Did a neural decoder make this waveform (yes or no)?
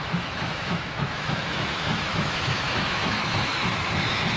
yes